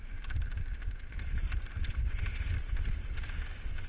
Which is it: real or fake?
real